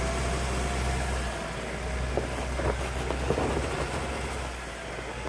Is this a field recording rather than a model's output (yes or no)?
yes